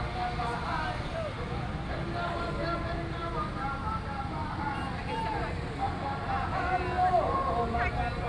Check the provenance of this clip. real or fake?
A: real